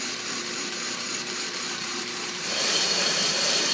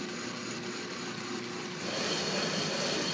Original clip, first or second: second